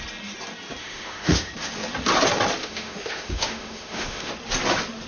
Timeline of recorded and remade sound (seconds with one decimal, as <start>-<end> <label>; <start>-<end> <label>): 0.0-0.8 recorded; 0.8-1.5 remade; 1.5-2.6 recorded; 2.6-4.3 remade; 4.3-5.1 recorded